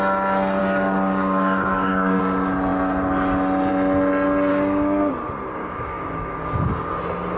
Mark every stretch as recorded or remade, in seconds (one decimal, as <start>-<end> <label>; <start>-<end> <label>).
0.0-0.6 recorded; 0.6-2.2 remade; 2.2-4.5 recorded; 4.5-5.1 remade; 5.1-5.6 recorded; 5.6-7.0 remade; 7.0-7.4 recorded